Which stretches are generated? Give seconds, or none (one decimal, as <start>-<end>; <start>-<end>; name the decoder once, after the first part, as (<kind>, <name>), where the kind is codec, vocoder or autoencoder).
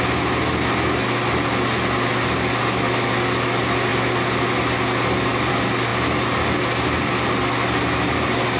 none